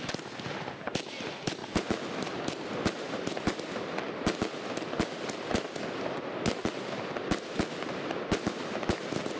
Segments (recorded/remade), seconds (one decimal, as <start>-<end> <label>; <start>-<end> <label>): 0.0-9.4 recorded